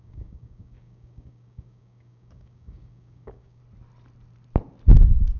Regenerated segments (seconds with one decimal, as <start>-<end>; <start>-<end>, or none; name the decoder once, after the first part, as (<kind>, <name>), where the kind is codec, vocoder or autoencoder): 0.0-3.6 (codec, DAC)